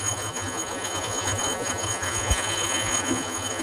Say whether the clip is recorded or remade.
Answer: remade